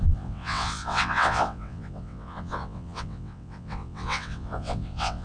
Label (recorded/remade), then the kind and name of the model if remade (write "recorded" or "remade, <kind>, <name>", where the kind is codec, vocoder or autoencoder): remade, vocoder, WaveNeXt